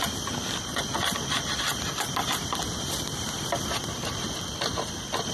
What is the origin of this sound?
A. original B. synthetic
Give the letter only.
A